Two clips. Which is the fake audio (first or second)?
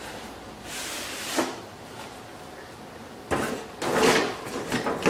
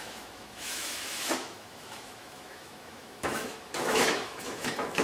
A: second